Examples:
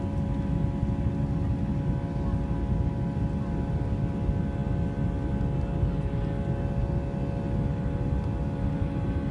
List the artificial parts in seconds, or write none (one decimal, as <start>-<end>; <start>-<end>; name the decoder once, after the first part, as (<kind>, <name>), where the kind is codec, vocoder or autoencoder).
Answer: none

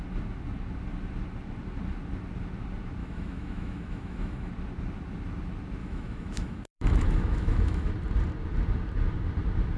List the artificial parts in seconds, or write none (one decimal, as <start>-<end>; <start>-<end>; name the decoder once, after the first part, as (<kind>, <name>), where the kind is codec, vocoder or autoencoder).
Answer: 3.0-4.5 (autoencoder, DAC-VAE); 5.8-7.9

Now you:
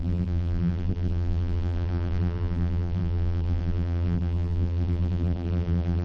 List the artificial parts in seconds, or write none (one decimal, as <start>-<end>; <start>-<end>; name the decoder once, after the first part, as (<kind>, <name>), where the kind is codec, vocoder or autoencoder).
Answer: 0.0-6.0 (vocoder, BigVGAN v2)

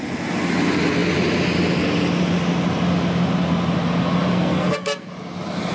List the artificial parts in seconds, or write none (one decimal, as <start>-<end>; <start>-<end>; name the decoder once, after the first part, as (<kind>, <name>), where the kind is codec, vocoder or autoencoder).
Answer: 4.3-5.1 (codec, SNAC)

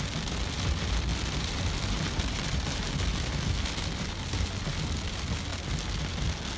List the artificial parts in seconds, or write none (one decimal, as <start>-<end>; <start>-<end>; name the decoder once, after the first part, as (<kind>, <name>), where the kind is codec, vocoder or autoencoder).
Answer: 0.0-5.5 (vocoder, BigVGAN v2)

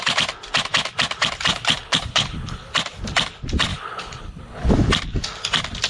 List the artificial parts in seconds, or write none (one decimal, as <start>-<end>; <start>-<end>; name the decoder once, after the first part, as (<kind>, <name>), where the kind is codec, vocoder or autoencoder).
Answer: 1.5-2.7 (codec, HILCodec); 3.7-4.7